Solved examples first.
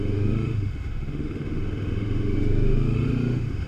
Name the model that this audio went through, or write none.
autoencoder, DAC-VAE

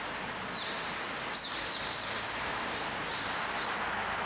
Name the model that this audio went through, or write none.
none